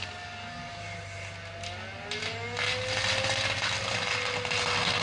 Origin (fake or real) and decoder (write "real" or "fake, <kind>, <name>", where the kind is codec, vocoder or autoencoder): real